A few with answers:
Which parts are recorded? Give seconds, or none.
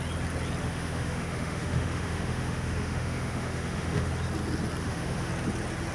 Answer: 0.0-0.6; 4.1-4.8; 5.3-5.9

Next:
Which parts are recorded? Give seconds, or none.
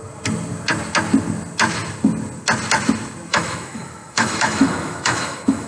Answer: 0.0-3.3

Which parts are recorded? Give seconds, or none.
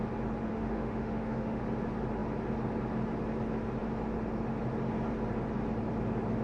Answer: 0.0-0.5; 1.6-6.4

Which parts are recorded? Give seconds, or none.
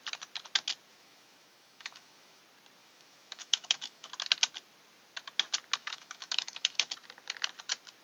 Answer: 0.0-0.9; 2.4-2.8; 4.1-5.8; 6.9-8.0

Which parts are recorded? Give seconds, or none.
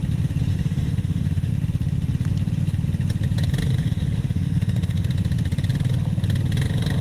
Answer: 0.0-0.5; 1.5-3.8; 5.1-7.0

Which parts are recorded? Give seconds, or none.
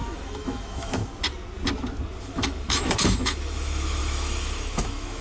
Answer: 1.0-2.2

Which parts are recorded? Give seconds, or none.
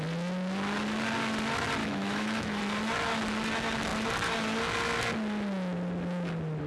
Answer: 0.0-1.8; 2.6-6.7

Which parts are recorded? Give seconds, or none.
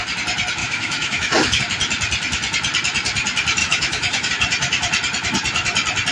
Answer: 0.0-0.6; 1.6-3.6; 4.3-6.1